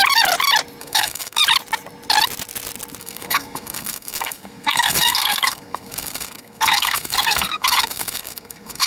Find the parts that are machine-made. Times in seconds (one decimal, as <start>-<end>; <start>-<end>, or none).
0.8-1.4; 3.0-8.9